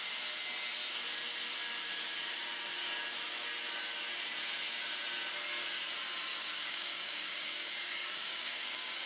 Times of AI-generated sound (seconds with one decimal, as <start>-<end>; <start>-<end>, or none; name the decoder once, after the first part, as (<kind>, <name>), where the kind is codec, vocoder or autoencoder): 6.3-9.1 (codec, DAC)